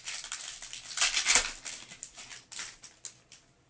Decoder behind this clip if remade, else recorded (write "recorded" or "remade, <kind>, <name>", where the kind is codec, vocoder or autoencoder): recorded